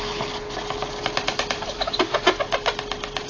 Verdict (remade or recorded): recorded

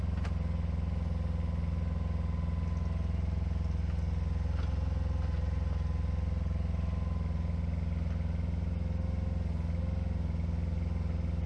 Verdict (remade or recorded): recorded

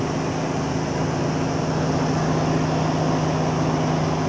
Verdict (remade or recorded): recorded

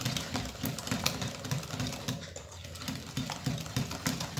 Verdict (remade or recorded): recorded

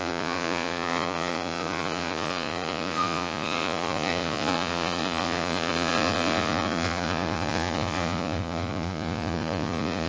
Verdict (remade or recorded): remade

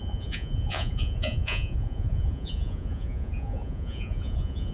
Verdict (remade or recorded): remade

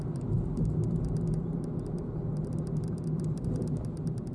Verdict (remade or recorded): recorded